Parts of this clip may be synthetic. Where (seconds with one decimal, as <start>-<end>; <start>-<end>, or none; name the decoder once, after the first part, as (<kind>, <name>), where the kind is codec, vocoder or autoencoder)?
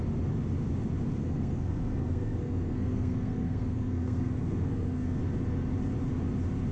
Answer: 1.2-5.2 (codec, SNAC)